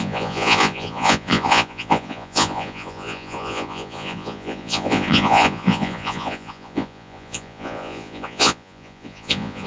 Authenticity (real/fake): fake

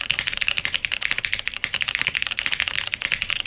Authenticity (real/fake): real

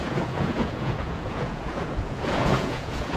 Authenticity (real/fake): fake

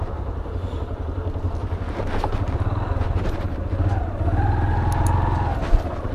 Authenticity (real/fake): real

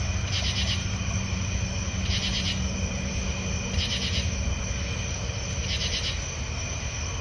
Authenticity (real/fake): real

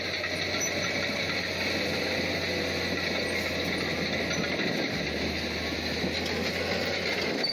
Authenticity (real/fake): real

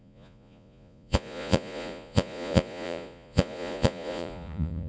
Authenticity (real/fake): fake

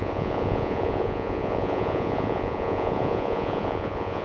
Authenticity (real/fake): fake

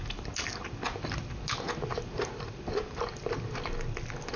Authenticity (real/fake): real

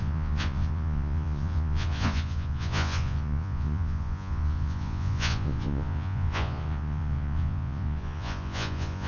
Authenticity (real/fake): fake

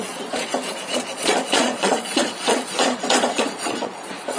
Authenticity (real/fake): fake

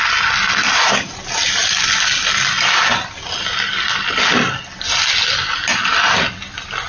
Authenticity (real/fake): real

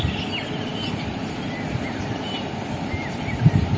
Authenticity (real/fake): real